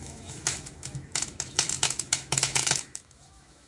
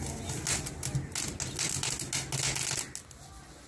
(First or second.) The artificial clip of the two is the first